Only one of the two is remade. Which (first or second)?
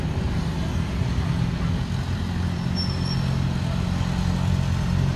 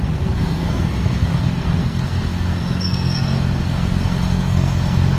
second